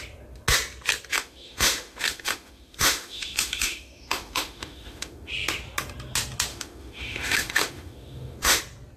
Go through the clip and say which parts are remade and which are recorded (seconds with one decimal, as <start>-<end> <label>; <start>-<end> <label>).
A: 0.0-1.1 recorded; 1.1-5.3 remade; 5.3-6.5 recorded; 6.5-8.6 remade; 8.6-9.0 recorded

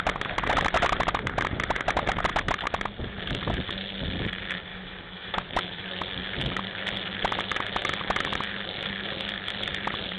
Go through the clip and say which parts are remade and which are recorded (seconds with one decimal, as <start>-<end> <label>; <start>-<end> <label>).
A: 0.0-4.7 recorded; 4.7-6.0 remade; 6.0-10.2 recorded

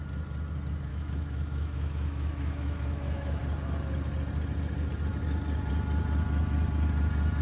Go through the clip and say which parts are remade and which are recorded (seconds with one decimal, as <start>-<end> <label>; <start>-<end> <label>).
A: 0.0-0.9 recorded; 0.9-3.4 remade; 3.4-7.4 recorded

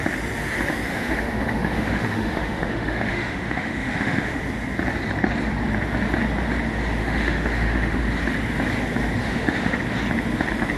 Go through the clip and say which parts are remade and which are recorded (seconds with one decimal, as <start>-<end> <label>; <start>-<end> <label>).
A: 0.0-0.9 recorded; 0.9-4.4 remade; 4.4-7.0 recorded; 7.0-8.0 remade; 8.0-9.2 recorded; 9.2-9.8 remade; 9.8-10.8 recorded